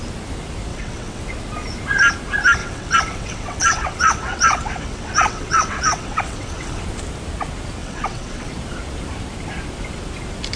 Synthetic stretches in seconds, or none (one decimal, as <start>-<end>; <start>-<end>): 0.7-1.2; 2.6-6.8; 7.8-8.5